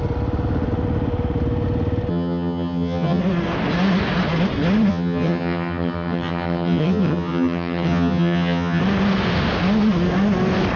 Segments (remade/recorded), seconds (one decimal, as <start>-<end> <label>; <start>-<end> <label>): 0.0-2.1 recorded; 2.1-3.2 remade; 3.2-4.9 recorded; 4.9-8.8 remade; 8.8-10.8 recorded